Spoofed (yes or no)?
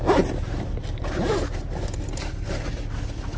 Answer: no